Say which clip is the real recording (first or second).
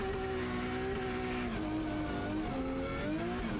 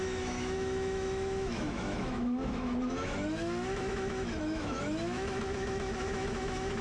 first